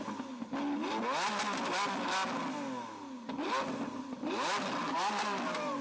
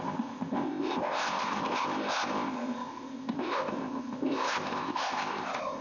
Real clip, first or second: first